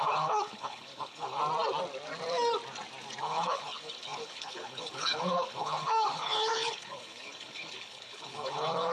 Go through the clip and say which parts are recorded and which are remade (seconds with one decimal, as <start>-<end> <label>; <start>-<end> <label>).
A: 0.0-1.4 remade; 1.4-3.2 recorded; 3.2-8.9 remade